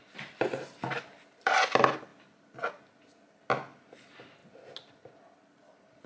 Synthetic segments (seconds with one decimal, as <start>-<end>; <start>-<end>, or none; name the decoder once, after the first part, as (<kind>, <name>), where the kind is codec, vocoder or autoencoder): none